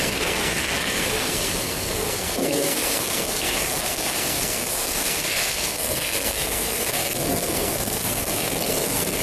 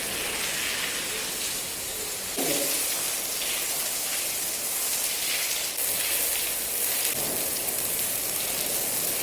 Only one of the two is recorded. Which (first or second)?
second